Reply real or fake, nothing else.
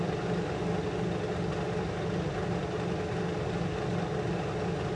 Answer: real